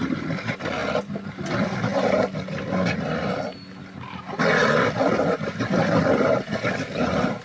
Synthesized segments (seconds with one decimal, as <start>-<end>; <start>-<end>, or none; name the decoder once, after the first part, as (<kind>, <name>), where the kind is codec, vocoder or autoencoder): none